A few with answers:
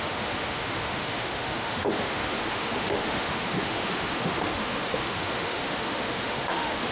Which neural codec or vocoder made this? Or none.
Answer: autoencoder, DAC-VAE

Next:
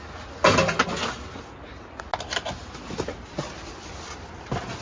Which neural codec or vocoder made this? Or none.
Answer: none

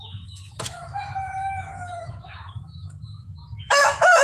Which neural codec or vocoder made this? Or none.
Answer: autoencoder, DAC-VAE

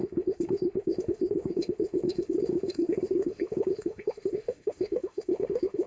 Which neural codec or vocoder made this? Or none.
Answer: autoencoder, DAC-VAE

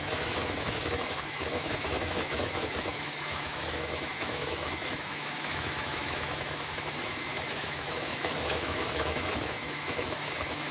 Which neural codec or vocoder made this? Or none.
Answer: autoencoder, DAC-VAE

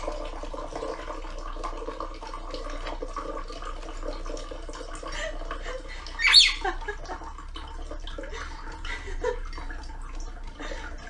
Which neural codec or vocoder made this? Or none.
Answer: none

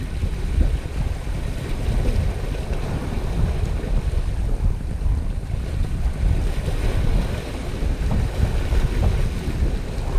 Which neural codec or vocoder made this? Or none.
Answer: none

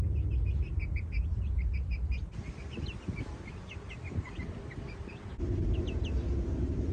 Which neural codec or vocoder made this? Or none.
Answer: none